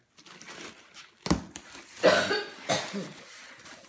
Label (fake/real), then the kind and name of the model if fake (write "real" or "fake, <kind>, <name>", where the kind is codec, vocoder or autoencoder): real